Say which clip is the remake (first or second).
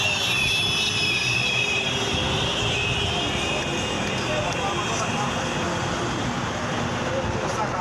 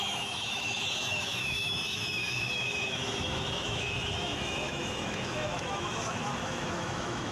second